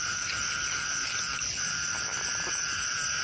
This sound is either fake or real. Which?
real